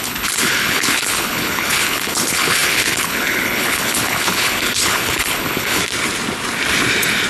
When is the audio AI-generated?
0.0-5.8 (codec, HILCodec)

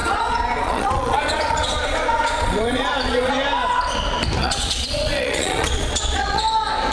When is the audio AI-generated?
0.0-3.3 (vocoder, Vocos); 4.4-6.4

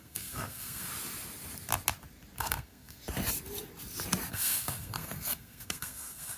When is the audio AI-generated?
0.0-0.9 (codec, SNAC); 2.4-3.0; 4.3-6.4

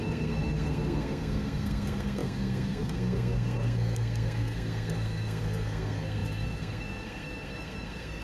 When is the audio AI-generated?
0.0-8.2 (codec, SNAC)

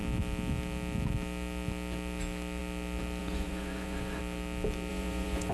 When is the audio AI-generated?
3.2-4.2 (vocoder, Vocos); 4.9-5.5

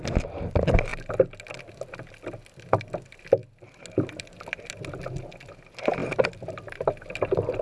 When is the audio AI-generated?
6.0-7.6 (vocoder, BigVGAN v2)

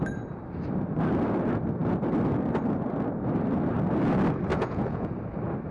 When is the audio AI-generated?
4.5-5.1 (vocoder, Vocos)

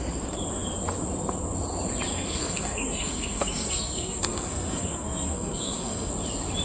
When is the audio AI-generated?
2.1-6.1 (codec, SNAC)